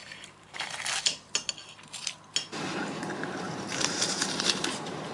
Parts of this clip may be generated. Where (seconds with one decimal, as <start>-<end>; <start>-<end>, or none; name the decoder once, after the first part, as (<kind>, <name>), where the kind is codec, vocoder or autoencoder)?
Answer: 0.0-0.8 (vocoder, BigVGAN v2); 2.8-5.1